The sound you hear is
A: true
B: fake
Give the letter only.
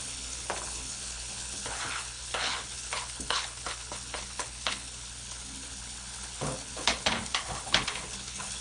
B